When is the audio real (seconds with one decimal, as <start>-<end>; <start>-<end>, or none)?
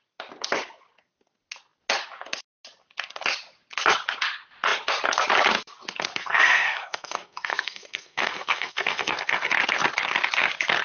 0.0-6.1; 9.5-10.8